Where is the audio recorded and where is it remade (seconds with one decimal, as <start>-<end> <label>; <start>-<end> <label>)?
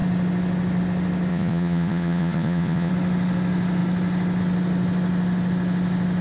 0.0-1.3 recorded; 1.3-2.9 remade; 2.9-6.2 recorded